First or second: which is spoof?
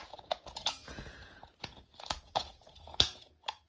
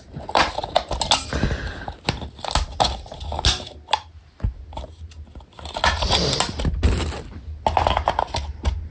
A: first